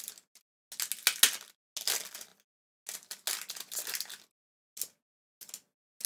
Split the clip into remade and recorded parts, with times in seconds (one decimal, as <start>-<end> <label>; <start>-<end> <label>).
0.0-6.1 recorded